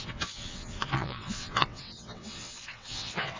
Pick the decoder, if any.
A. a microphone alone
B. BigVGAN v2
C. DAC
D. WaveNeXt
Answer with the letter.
D